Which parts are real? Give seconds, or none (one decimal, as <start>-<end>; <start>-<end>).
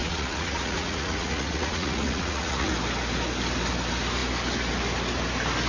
2.7-5.7